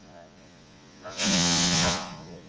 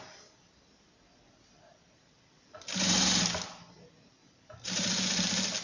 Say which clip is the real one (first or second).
second